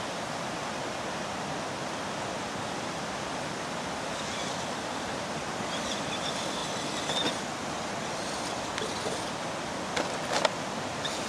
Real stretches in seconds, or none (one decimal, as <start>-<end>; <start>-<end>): 0.0-11.3